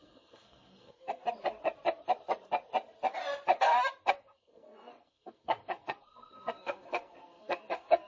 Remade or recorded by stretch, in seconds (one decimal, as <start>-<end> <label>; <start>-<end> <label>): 0.0-1.2 remade; 1.2-4.0 recorded; 4.0-8.1 remade